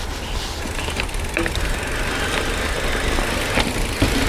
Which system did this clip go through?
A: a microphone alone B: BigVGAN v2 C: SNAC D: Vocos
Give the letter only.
A